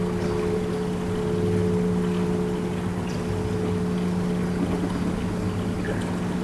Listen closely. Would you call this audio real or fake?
real